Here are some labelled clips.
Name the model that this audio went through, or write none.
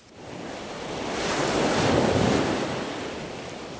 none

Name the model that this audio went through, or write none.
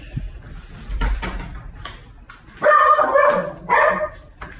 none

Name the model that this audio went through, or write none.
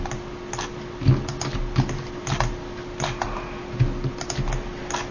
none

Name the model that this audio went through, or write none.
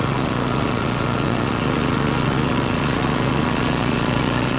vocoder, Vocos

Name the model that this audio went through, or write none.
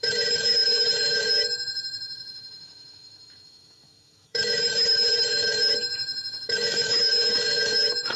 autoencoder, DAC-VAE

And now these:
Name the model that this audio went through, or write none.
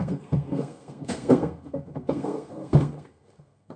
codec, SNAC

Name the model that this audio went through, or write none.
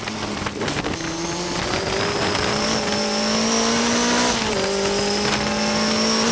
none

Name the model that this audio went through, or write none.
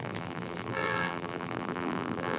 vocoder, BigVGAN v2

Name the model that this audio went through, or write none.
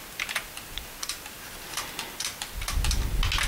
none